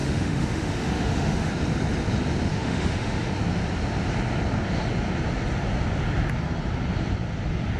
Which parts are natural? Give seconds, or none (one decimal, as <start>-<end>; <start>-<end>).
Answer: 1.5-2.5; 3.3-7.8